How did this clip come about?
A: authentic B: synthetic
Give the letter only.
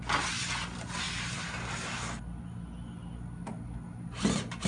A